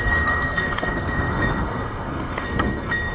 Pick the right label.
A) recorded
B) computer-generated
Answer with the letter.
B